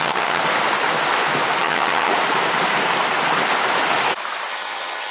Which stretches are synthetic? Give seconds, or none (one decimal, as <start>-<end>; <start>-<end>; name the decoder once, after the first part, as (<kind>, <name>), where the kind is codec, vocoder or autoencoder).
0.0-0.4 (vocoder, HiFi-GAN); 1.6-2.1; 4.5-5.1